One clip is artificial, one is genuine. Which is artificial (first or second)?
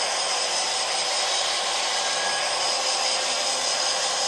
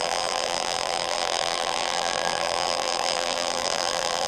second